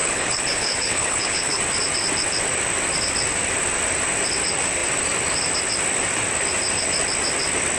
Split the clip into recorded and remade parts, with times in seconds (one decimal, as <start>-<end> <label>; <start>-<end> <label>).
0.0-1.6 remade; 1.6-7.8 recorded